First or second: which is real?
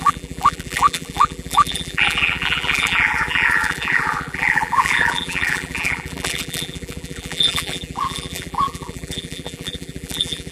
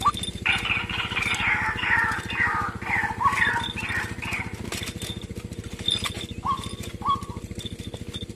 second